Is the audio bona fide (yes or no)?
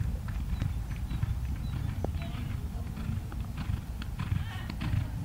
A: yes